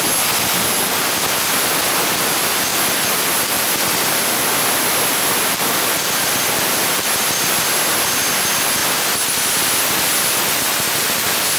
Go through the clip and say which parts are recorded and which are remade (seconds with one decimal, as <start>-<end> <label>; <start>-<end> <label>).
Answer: 0.0-11.6 recorded